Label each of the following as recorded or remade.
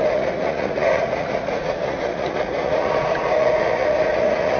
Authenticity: remade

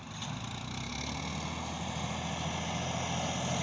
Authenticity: recorded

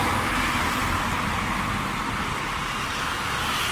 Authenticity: recorded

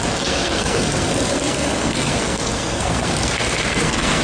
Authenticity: remade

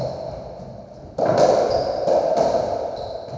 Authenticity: recorded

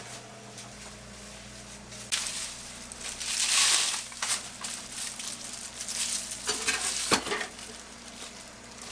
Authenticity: recorded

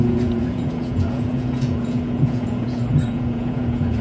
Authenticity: remade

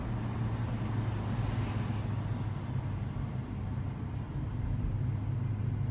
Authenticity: recorded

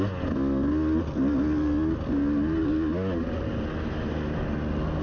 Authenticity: recorded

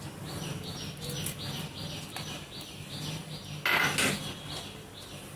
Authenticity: recorded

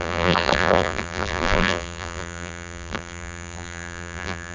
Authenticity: remade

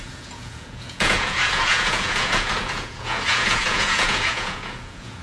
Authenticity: remade